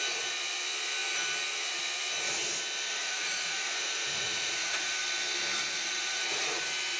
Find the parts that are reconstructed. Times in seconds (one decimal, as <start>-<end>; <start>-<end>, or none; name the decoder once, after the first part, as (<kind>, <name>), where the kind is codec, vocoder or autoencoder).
3.0-5.0 (vocoder, Vocos); 5.7-6.6